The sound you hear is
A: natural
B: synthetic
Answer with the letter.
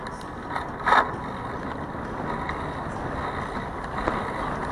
A